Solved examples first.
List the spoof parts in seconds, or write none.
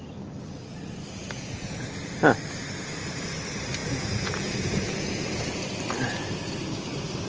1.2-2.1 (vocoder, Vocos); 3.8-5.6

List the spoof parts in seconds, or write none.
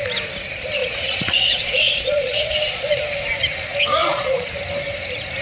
0.8-3.0 (vocoder, Vocos); 4.0-4.6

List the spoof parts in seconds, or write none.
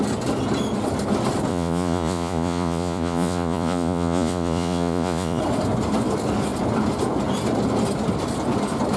1.5-5.4 (vocoder, Vocos)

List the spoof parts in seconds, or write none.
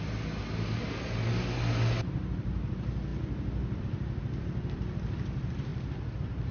none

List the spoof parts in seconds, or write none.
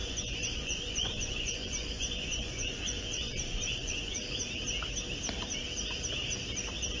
0.0-4.2 (vocoder, Vocos)